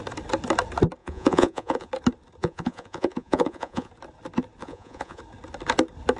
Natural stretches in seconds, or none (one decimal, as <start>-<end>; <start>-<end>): 0.0-1.0; 1.9-2.4; 3.9-4.6; 5.2-6.2